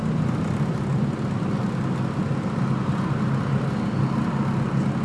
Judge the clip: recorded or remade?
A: recorded